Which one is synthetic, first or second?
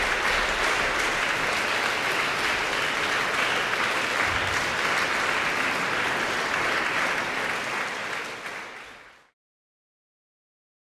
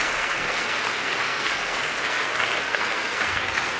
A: second